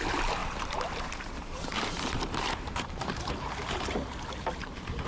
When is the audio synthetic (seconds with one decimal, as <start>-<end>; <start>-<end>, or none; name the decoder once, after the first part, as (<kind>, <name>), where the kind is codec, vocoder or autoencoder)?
0.4-3.5 (vocoder, BigVGAN v2)